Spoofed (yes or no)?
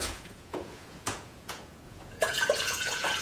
yes